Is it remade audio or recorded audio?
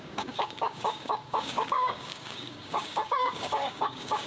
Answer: remade